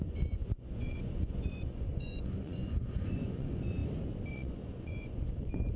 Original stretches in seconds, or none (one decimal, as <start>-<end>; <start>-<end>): 3.8-4.3